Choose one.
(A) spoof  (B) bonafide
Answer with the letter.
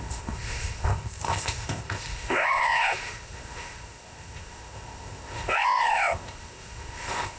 A